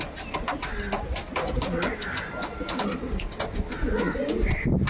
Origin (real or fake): real